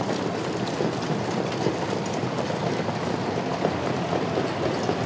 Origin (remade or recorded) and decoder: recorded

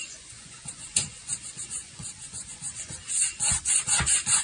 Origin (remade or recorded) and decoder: remade, vocoder, Vocos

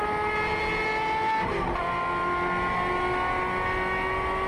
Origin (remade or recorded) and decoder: recorded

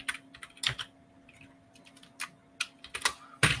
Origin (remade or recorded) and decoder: recorded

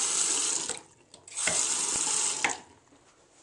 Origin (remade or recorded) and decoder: recorded